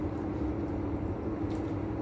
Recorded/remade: recorded